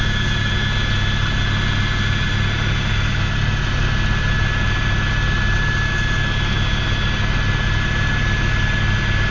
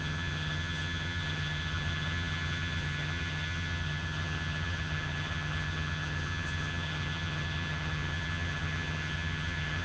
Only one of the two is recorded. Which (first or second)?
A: first